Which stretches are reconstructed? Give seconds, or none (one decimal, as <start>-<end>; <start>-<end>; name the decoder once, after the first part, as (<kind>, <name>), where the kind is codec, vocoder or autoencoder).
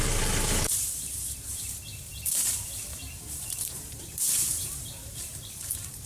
0.0-6.1 (vocoder, BigVGAN v2)